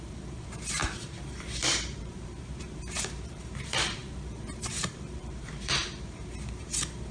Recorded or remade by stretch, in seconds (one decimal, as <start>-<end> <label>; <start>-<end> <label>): 0.0-7.1 remade